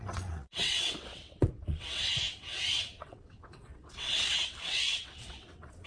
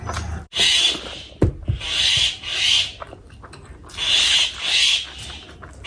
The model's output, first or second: first